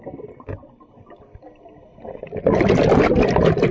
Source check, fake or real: real